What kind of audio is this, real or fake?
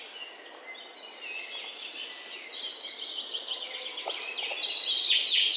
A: real